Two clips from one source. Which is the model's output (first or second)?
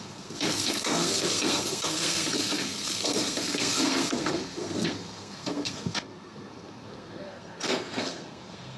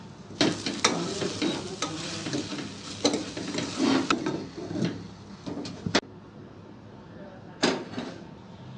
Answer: first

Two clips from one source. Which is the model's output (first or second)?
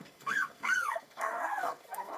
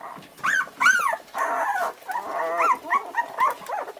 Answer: first